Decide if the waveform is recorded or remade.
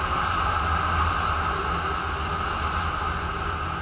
recorded